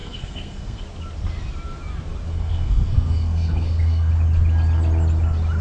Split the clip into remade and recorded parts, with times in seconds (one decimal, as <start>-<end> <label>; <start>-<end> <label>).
0.0-0.8 remade; 0.8-2.3 recorded; 2.3-4.1 remade; 4.1-5.6 recorded